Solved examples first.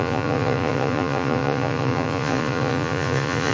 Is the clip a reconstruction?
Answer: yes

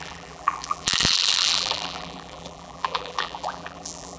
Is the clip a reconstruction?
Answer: yes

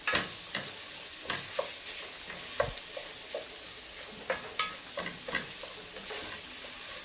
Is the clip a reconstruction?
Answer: no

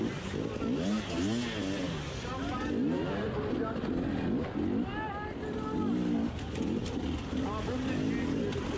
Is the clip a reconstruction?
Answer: no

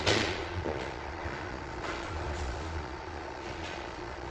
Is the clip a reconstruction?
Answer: yes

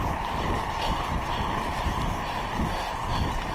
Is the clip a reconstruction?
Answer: no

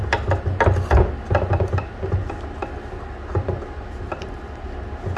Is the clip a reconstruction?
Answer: no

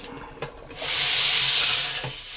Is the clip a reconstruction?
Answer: no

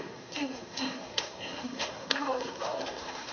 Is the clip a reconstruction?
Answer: yes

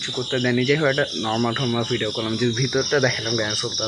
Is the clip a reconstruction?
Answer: no